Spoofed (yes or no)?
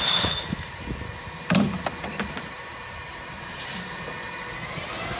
no